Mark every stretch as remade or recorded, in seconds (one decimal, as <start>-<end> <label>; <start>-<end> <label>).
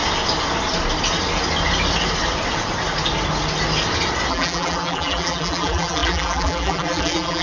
0.0-4.3 recorded; 4.3-7.4 remade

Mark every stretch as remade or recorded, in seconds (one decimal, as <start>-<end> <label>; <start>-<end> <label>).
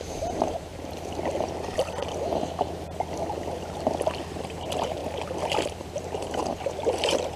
0.0-0.7 remade; 0.7-4.3 recorded; 4.3-5.0 remade; 5.0-5.7 recorded; 5.7-7.4 remade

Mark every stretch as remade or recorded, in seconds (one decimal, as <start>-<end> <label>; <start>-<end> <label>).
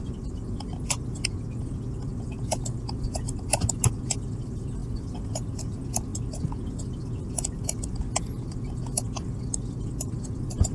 0.0-4.8 recorded; 4.8-5.3 remade; 5.3-10.7 recorded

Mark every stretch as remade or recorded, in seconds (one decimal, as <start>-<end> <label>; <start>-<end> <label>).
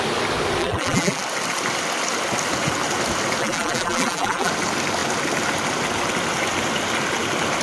0.0-0.6 recorded; 0.6-1.2 remade; 1.2-3.4 recorded; 3.4-4.5 remade; 4.5-7.6 recorded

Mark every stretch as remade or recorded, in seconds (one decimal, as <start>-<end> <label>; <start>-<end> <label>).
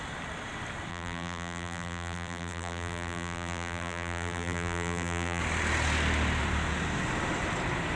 0.0-0.9 recorded; 0.9-5.4 remade; 5.4-8.0 recorded